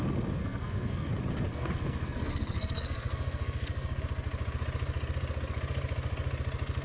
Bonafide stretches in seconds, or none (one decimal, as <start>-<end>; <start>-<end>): 0.0-0.4; 1.1-1.5; 4.0-6.8